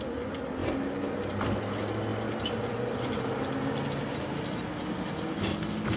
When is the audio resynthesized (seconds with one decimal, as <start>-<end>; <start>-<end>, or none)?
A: none